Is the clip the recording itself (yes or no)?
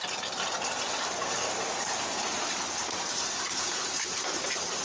no